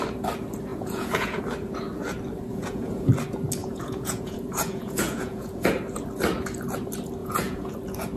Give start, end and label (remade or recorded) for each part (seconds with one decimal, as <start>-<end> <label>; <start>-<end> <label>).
0.0-0.7 recorded; 0.7-1.4 remade; 1.4-2.5 recorded; 2.5-3.1 remade; 3.1-3.6 recorded; 3.6-5.7 remade; 5.7-7.2 recorded; 7.2-7.7 remade; 7.7-8.2 recorded